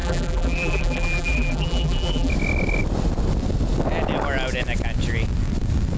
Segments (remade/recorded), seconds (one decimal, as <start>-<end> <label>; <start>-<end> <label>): 0.0-2.3 remade; 2.3-6.0 recorded